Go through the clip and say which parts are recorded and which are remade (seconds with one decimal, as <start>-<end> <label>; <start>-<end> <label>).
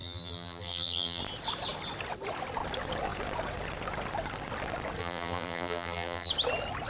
0.0-1.2 remade; 1.2-5.0 recorded; 5.0-6.3 remade; 6.3-6.9 recorded